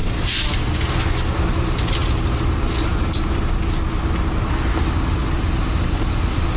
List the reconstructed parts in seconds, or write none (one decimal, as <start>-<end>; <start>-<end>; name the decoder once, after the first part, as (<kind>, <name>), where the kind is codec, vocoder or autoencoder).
none